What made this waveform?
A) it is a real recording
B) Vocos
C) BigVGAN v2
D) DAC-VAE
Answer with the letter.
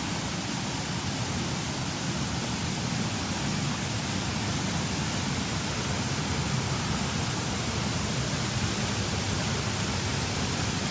A